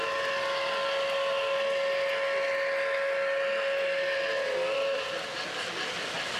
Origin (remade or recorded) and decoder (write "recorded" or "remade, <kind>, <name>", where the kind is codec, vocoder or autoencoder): recorded